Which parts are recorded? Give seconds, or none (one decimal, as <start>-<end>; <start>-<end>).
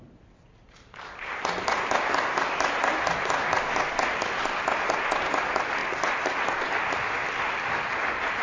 0.0-8.4